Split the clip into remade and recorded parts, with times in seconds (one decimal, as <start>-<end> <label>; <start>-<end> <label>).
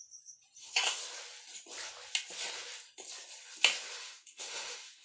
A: 0.0-0.6 recorded; 0.6-1.0 remade; 1.0-4.0 recorded; 4.0-5.0 remade